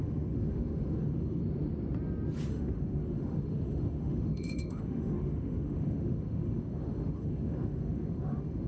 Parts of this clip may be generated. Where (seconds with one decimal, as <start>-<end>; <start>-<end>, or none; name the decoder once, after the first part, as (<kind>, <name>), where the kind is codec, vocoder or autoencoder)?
0.0-1.4 (autoencoder, DAC-VAE); 2.5-8.7